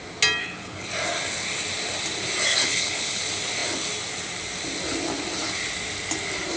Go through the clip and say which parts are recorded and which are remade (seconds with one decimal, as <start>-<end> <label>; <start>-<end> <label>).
0.0-0.4 recorded; 0.4-0.9 remade; 0.9-2.5 recorded; 2.5-3.2 remade; 3.2-6.6 recorded